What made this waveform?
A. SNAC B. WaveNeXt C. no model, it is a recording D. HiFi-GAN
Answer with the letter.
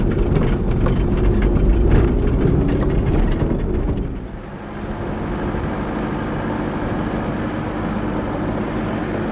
C